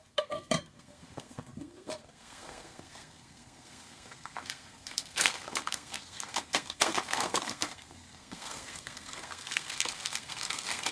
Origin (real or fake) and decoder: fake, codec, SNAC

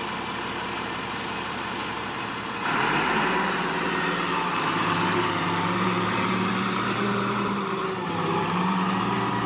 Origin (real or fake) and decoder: fake, vocoder, BigVGAN v2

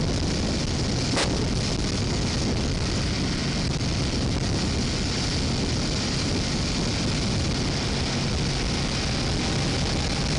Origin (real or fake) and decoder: real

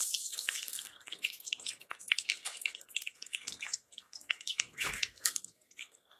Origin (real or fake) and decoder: fake, codec, SNAC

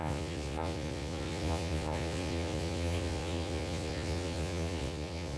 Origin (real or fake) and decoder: fake, vocoder, Vocos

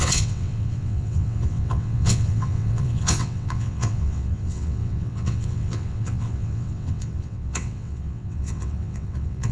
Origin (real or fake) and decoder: fake, vocoder, WaveNeXt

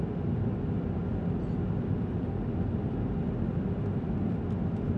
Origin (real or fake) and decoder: real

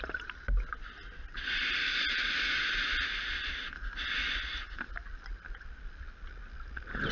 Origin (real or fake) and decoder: real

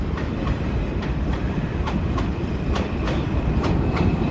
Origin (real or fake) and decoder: fake, vocoder, BigVGAN v2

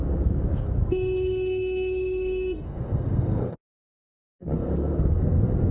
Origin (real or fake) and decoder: fake, codec, SNAC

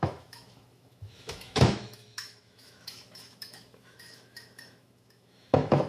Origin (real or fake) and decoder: fake, autoencoder, DAC-VAE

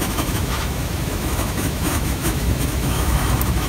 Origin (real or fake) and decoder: fake, autoencoder, DAC-VAE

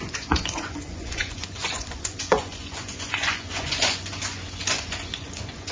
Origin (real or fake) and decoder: fake, vocoder, Vocos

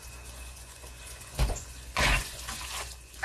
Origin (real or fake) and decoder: fake, vocoder, Vocos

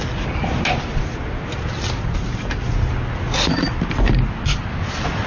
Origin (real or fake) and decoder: real